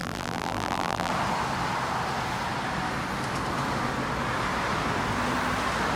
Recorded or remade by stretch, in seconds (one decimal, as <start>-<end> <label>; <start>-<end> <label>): 0.0-1.1 remade; 1.1-6.0 recorded